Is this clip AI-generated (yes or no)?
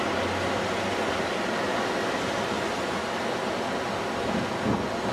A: no